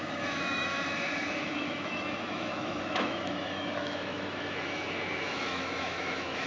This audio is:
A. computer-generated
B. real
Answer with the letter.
A